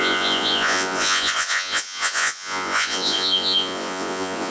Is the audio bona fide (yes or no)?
no